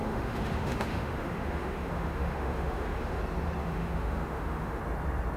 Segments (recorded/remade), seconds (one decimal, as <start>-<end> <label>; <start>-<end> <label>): 0.0-3.2 remade; 3.2-3.6 recorded; 3.6-4.8 remade; 4.8-5.4 recorded